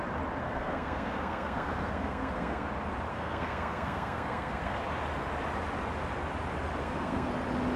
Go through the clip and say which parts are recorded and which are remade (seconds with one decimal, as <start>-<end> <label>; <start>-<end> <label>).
0.0-0.4 recorded; 0.4-2.7 remade; 2.7-3.1 recorded; 3.1-4.8 remade; 4.8-6.8 recorded; 6.8-7.3 remade; 7.3-7.8 recorded